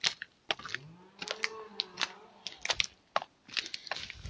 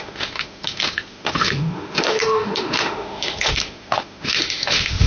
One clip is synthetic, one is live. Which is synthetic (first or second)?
second